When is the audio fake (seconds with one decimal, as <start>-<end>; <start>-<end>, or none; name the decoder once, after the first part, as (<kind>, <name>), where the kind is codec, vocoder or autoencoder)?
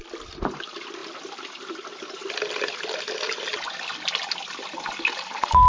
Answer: none